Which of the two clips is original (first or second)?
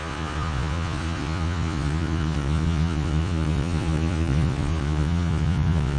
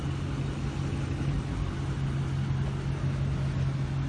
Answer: second